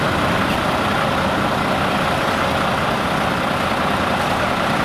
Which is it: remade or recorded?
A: recorded